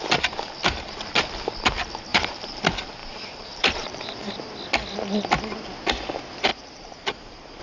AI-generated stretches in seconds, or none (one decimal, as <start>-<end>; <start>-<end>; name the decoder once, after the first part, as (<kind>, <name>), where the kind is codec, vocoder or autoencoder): 2.1-2.6 (vocoder, BigVGAN v2); 3.0-4.3; 6.5-7.6